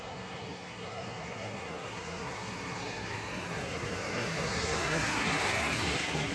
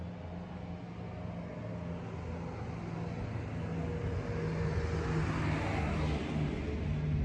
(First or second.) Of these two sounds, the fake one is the first